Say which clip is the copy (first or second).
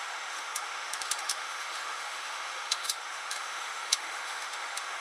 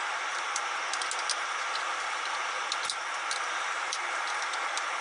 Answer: first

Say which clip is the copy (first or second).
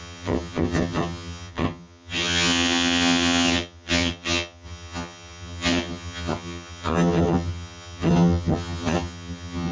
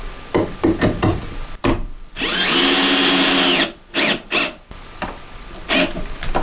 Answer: first